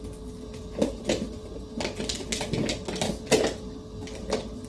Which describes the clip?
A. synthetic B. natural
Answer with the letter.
B